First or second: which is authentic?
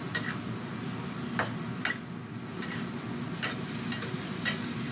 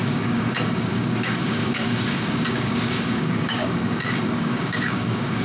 first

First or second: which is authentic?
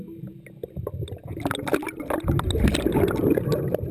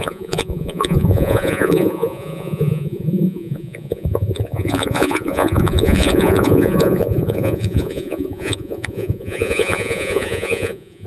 first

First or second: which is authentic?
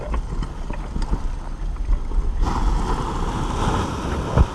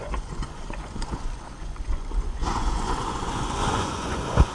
first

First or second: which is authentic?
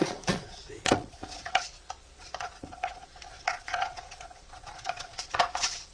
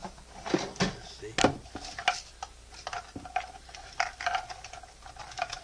second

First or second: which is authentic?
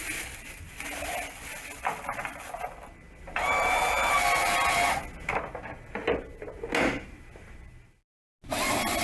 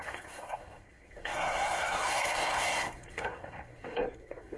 first